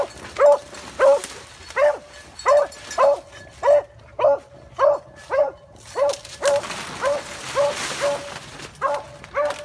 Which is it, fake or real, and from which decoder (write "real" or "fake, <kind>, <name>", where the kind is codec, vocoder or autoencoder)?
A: real